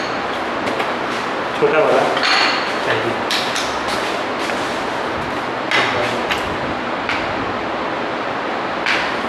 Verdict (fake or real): real